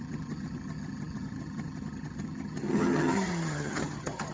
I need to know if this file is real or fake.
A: fake